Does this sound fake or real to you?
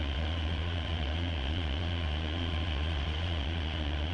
fake